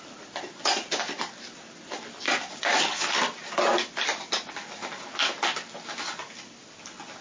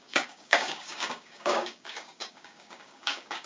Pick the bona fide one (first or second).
first